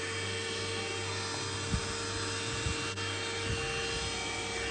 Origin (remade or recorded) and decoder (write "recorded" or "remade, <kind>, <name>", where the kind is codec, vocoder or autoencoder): recorded